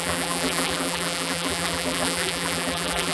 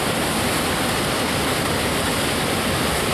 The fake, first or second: first